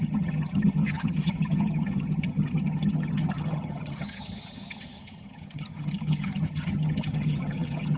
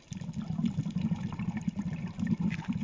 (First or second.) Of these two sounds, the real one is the second